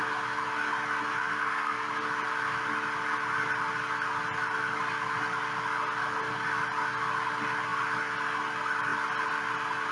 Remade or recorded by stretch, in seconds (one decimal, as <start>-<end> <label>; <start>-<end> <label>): 0.0-1.2 recorded; 1.2-1.9 remade; 1.9-9.9 recorded